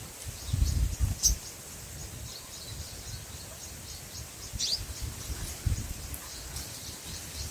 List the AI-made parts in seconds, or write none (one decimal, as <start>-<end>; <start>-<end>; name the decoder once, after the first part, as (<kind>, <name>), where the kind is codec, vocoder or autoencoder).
1.0-1.5 (vocoder, BigVGAN v2)